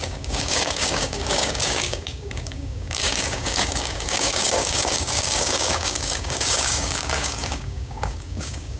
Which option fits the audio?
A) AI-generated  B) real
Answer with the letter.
A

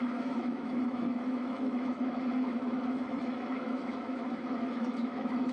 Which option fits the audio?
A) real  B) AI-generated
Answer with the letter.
B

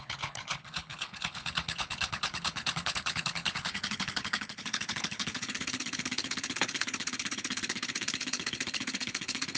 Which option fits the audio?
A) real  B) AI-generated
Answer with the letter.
B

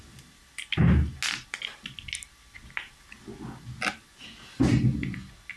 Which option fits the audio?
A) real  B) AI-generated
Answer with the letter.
A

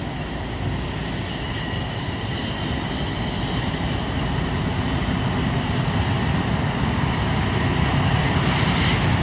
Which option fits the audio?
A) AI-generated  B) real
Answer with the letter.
B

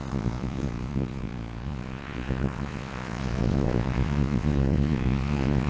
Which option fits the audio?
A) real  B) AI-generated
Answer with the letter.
B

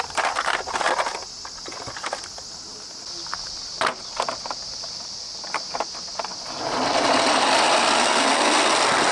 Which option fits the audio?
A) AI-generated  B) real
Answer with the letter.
B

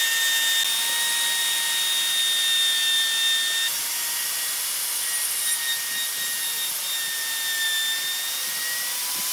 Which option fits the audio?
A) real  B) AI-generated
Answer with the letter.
A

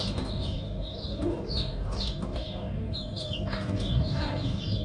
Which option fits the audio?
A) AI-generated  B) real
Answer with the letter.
A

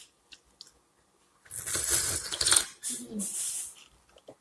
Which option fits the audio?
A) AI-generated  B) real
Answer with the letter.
B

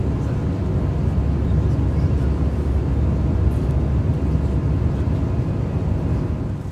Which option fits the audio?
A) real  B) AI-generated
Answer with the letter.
A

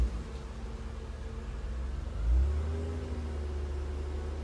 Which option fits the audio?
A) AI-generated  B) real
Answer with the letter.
B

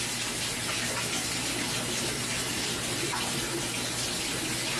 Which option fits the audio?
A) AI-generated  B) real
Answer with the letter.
B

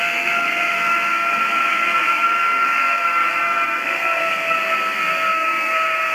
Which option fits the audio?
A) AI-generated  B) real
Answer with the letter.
A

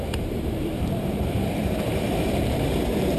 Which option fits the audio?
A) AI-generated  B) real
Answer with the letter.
A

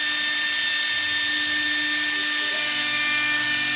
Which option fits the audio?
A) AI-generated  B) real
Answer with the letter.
B